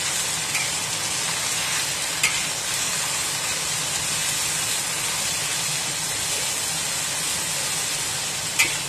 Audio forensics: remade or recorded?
recorded